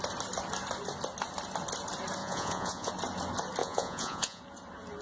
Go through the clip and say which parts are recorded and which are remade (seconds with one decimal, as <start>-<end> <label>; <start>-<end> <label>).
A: 0.0-2.2 recorded; 2.2-2.9 remade; 2.9-3.6 recorded; 3.6-4.4 remade; 4.4-5.0 recorded